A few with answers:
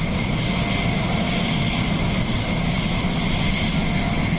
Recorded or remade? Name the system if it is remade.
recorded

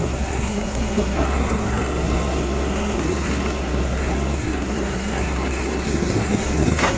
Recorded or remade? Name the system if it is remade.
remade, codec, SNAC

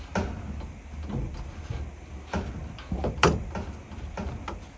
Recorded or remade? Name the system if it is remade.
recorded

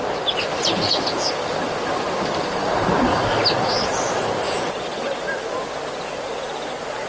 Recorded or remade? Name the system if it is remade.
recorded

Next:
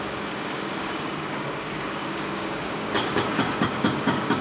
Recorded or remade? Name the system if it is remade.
remade, codec, DAC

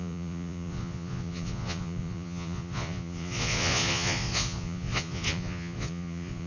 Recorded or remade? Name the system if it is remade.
remade, vocoder, Vocos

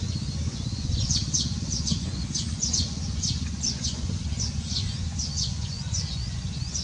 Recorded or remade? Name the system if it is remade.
remade, vocoder, Vocos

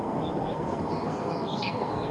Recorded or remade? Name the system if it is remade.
remade, codec, SNAC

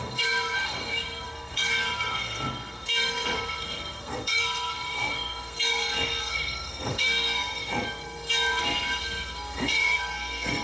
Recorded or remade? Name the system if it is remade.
remade, codec, SNAC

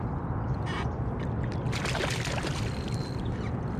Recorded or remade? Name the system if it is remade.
recorded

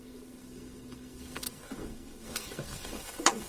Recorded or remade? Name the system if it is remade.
remade, codec, SNAC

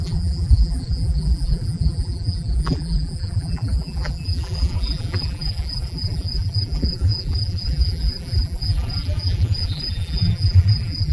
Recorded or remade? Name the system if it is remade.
remade, vocoder, BigVGAN v2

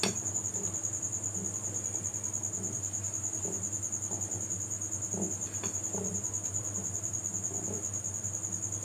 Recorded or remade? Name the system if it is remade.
recorded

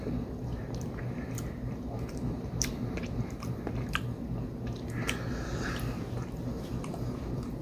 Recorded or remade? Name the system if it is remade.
remade, vocoder, BigVGAN v2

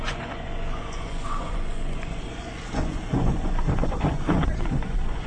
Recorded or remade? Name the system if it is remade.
remade, vocoder, Vocos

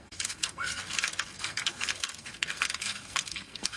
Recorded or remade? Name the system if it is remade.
remade, codec, SNAC